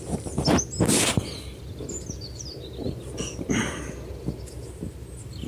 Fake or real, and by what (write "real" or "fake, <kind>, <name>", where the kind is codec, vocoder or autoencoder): real